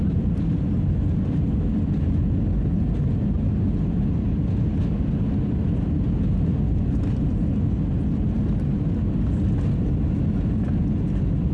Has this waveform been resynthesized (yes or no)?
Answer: no